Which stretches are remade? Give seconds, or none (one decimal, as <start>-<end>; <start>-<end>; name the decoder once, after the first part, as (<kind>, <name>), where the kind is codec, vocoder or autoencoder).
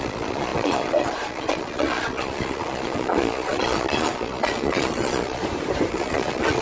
0.0-5.4 (vocoder, Vocos); 5.9-6.6